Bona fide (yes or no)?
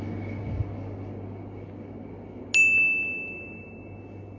yes